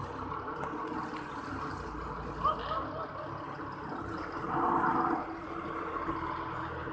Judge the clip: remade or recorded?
recorded